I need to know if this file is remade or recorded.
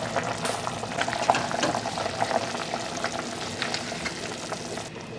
recorded